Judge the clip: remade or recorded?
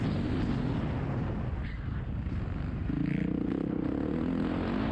recorded